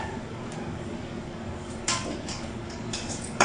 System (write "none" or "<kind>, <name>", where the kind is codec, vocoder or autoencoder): codec, DAC